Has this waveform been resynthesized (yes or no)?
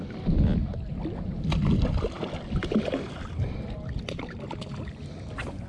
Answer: no